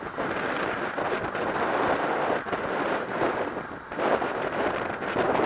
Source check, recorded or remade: recorded